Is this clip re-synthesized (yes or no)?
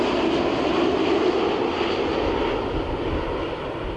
no